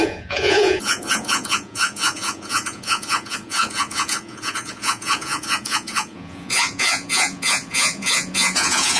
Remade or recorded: remade